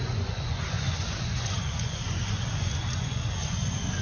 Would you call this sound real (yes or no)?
no